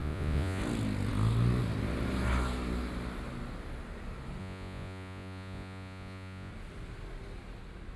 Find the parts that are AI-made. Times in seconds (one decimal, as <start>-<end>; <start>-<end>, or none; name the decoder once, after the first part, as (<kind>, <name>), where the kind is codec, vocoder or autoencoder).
0.0-0.6 (vocoder, Vocos); 4.4-6.5